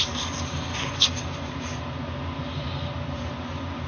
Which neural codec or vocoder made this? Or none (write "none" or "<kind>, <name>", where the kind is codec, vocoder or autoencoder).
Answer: none